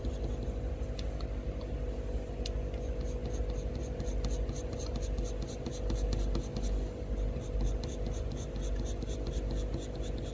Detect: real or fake real